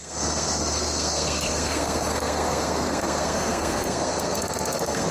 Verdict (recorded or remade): remade